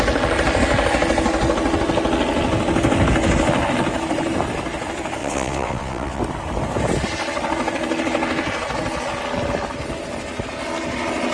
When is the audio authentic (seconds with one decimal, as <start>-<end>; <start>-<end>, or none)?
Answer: 0.0-5.2; 6.2-11.3